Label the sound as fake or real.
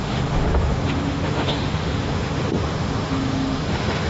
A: fake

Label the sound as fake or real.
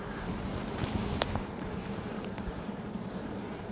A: fake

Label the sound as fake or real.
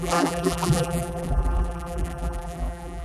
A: fake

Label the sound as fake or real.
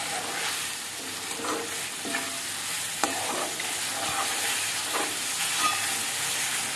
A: real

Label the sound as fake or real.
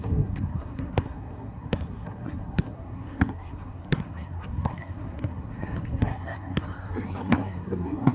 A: fake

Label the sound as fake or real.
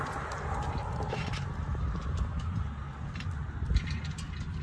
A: real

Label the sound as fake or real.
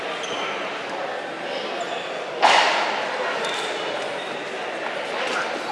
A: real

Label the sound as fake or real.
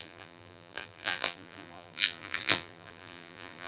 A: fake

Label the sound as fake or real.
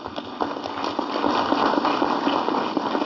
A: real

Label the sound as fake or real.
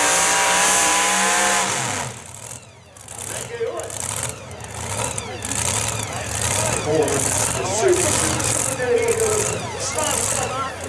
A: real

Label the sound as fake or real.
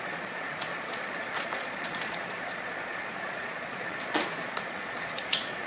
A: fake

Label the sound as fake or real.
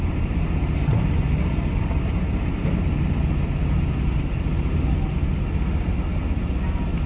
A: real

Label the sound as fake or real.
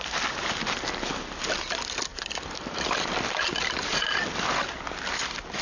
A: real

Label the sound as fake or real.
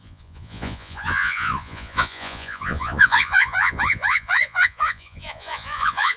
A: fake